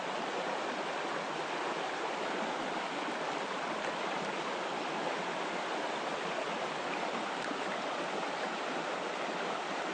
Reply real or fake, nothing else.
real